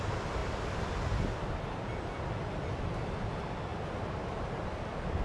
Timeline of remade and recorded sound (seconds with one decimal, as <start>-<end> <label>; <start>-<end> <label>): 0.0-5.2 recorded